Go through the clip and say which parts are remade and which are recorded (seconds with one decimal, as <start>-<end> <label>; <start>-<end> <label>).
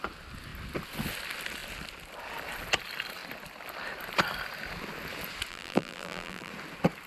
0.0-5.5 recorded; 5.5-6.5 remade; 6.5-7.1 recorded